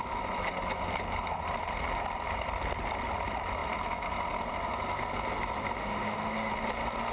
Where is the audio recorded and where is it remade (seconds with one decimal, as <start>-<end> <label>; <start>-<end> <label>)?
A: 0.0-5.8 recorded; 5.8-6.5 remade; 6.5-7.1 recorded

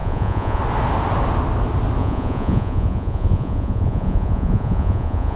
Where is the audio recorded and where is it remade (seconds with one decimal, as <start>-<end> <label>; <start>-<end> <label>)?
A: 0.0-0.6 remade; 0.6-2.0 recorded; 2.0-5.4 remade

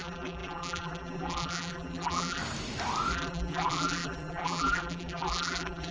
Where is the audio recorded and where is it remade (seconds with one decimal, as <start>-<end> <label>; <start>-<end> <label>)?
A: 0.0-2.4 remade; 2.4-3.1 recorded; 3.1-5.9 remade

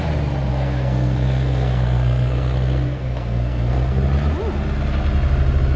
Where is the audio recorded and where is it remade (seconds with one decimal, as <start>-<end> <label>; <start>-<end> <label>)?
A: 0.0-0.5 recorded; 0.5-4.0 remade; 4.0-5.8 recorded

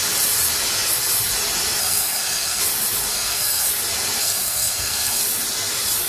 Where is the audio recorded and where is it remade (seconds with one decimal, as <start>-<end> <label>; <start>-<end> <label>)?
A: 0.0-1.8 recorded; 1.8-2.6 remade; 2.6-3.1 recorded; 3.1-3.7 remade; 3.7-4.2 recorded; 4.2-5.2 remade; 5.2-6.1 recorded

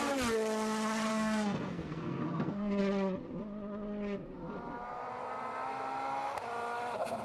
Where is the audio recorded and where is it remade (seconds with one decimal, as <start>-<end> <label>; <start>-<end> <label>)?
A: 0.0-1.1 recorded; 1.1-2.8 remade; 2.8-7.2 recorded

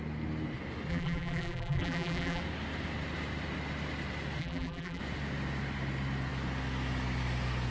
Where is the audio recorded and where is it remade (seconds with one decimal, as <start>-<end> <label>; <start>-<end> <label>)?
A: 0.0-0.9 recorded; 0.9-2.4 remade; 2.4-4.4 recorded; 4.4-5.0 remade; 5.0-7.7 recorded